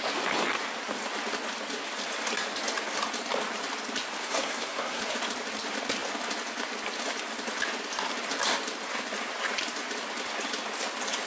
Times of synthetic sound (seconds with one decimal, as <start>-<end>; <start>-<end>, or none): 4.2-5.0